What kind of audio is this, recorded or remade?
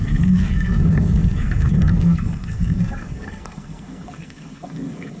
remade